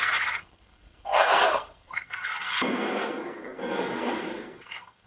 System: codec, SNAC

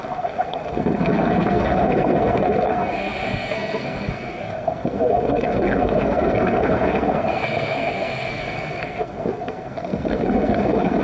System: codec, SNAC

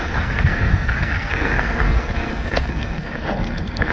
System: codec, SNAC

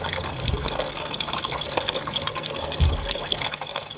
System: codec, SNAC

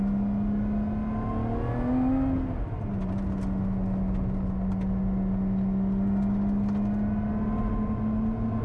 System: none